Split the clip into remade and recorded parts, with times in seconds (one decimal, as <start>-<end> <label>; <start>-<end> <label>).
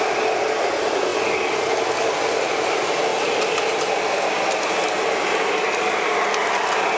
0.0-7.0 recorded